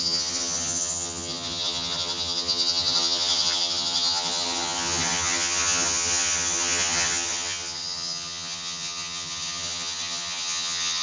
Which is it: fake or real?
fake